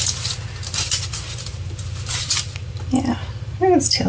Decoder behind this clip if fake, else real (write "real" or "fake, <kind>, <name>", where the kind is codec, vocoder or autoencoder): real